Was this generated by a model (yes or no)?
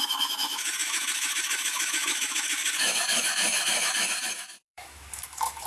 yes